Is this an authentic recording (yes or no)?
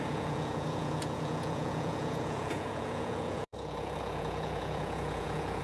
no